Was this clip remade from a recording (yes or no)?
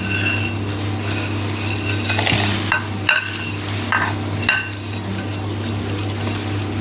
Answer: no